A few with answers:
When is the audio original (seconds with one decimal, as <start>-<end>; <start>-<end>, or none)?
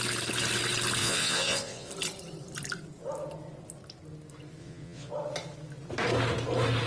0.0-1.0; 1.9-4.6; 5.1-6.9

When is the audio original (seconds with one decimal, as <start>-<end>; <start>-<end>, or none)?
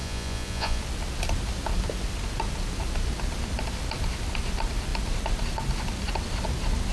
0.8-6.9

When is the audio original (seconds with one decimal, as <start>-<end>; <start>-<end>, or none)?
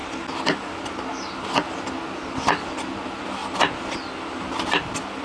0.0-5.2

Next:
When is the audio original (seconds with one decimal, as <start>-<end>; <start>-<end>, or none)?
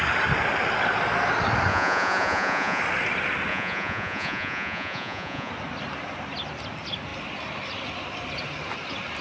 0.0-1.7; 2.8-3.5; 5.5-9.2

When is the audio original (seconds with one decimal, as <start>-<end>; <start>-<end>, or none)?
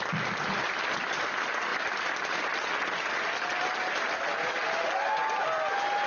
0.0-6.1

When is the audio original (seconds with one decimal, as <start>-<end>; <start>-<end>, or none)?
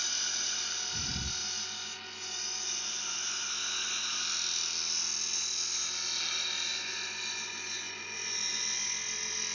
0.0-1.4; 3.5-6.7; 8.6-9.5